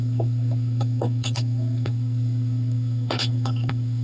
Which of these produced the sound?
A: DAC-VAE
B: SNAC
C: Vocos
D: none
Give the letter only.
B